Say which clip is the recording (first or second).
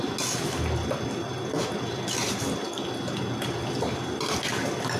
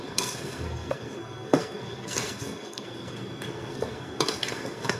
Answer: first